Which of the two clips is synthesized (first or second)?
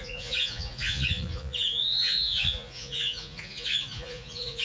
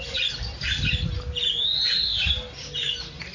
first